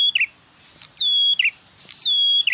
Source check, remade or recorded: recorded